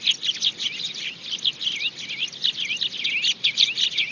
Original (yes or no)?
yes